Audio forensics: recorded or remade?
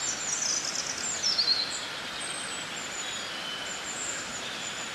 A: recorded